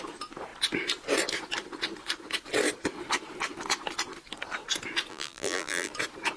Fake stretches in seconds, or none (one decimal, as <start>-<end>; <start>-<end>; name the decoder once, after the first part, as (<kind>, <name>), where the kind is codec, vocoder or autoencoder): 5.1-5.9 (vocoder, BigVGAN v2)